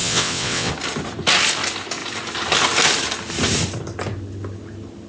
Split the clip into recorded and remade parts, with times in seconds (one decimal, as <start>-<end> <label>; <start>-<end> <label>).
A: 0.0-0.7 remade; 0.7-5.1 recorded